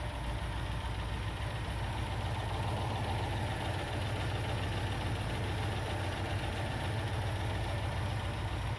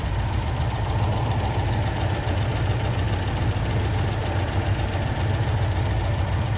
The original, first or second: first